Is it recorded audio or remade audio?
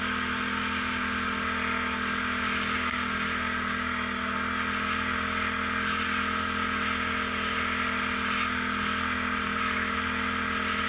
recorded